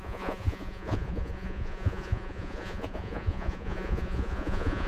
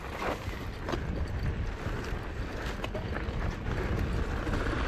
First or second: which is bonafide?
second